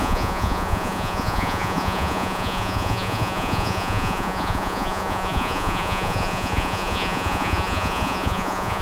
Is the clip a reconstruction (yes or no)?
yes